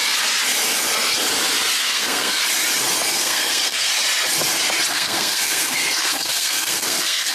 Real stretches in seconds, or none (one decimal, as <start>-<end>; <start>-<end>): 0.0-1.8; 2.4-3.1; 3.9-4.9